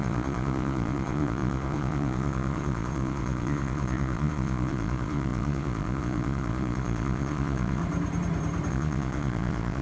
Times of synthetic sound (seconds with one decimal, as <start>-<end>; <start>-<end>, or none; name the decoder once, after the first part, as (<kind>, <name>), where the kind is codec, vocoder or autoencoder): 0.0-7.8 (vocoder, Vocos); 8.7-9.8